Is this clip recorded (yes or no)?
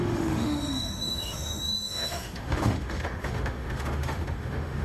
no